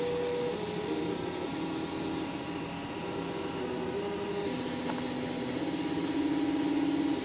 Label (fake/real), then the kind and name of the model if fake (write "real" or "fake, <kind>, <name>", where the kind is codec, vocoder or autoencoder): real